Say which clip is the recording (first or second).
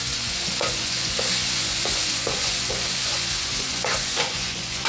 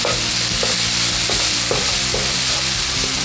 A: second